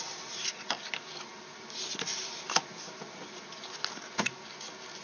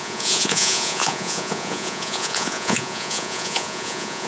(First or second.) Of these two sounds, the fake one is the second